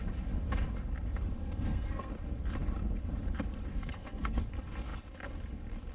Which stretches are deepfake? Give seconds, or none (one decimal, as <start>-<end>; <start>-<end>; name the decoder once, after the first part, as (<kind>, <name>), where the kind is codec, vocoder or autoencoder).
1.4-2.1 (codec, SNAC); 3.7-4.4